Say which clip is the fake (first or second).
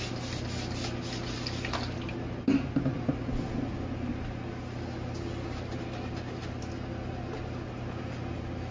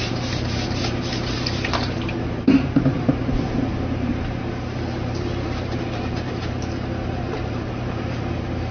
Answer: second